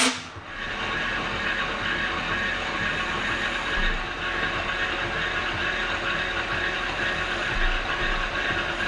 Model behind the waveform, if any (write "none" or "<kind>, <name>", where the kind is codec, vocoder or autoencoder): none